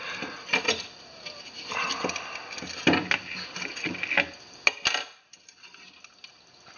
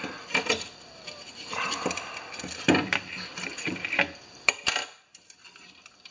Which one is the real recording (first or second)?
first